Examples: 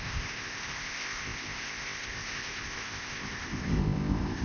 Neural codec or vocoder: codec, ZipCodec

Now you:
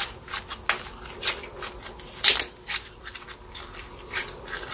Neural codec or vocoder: none